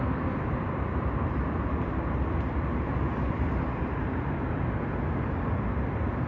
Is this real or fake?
real